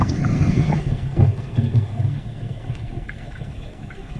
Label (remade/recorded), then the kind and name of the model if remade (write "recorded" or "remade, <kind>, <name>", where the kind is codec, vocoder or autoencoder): remade, codec, SNAC